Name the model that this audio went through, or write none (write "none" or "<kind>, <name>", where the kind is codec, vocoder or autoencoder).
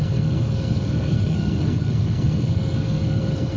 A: codec, SNAC